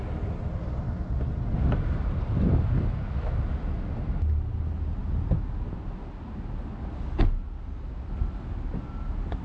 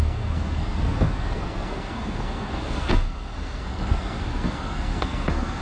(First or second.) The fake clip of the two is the second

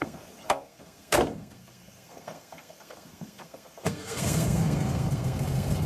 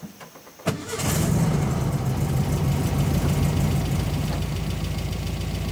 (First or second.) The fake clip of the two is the first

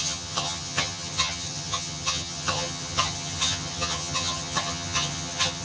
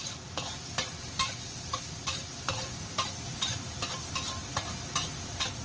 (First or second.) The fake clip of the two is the first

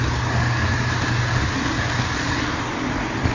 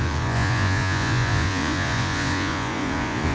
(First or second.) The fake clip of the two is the second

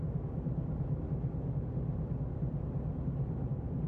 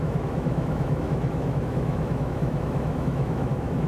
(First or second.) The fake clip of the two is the second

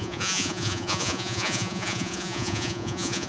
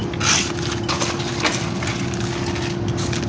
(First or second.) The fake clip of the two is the first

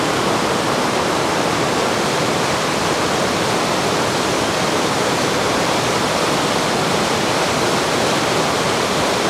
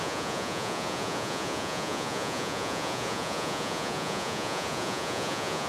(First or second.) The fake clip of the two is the second